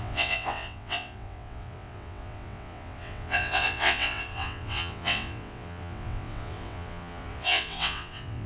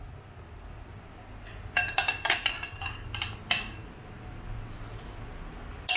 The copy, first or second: first